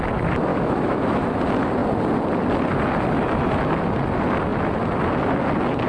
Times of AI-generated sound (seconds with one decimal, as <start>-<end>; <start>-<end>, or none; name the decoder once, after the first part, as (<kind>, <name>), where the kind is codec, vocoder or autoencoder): 0.5-1.3 (autoencoder, DAC-VAE)